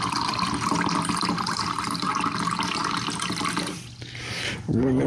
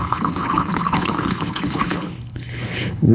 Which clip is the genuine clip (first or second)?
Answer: first